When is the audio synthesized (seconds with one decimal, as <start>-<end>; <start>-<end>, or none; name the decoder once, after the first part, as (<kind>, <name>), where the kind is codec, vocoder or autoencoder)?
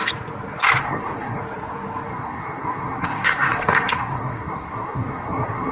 0.8-1.4 (codec, SNAC); 2.1-5.7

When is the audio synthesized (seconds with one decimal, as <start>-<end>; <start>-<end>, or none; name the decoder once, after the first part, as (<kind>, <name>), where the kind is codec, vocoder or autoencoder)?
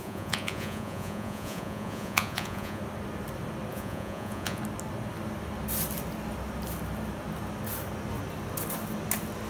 0.0-2.8 (vocoder, Vocos); 3.7-4.6